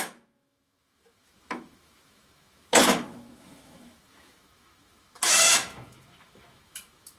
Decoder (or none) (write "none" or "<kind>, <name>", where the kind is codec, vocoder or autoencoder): autoencoder, DAC-VAE